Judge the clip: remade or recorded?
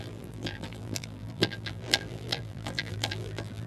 remade